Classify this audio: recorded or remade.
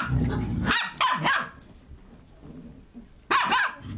recorded